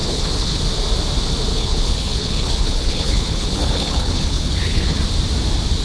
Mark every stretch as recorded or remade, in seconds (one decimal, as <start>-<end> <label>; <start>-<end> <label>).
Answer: 0.0-0.6 remade; 0.6-1.5 recorded; 1.5-5.0 remade; 5.0-5.8 recorded